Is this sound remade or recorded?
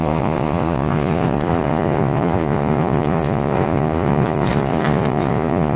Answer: remade